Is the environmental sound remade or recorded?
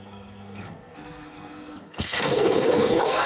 remade